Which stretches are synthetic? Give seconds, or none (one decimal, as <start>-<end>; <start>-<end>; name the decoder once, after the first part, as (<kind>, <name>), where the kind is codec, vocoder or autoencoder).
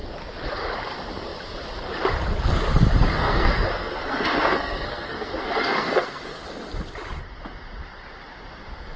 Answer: 3.1-6.4 (codec, SNAC)